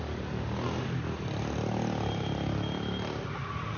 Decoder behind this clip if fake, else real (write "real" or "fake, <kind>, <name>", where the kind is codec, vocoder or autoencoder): real